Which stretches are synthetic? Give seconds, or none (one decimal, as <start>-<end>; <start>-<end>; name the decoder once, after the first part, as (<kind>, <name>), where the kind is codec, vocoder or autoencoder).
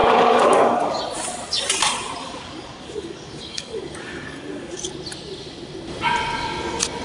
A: 0.0-1.0 (codec, DAC); 2.2-4.8